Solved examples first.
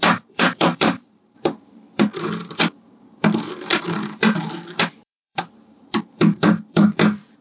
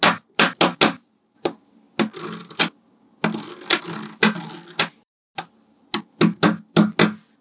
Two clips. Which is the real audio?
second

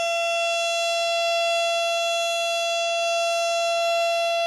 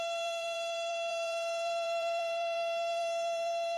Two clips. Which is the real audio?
first